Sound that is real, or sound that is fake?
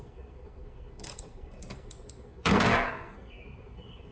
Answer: fake